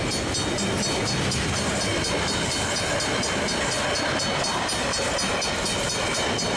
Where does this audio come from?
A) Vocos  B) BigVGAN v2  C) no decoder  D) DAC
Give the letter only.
C